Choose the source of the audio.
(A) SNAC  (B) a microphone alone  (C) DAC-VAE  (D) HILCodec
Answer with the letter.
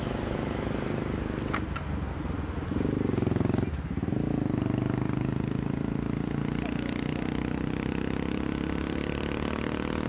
B